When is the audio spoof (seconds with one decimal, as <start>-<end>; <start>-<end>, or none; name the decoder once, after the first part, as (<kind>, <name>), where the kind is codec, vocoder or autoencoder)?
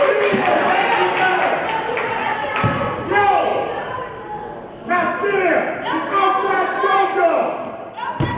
none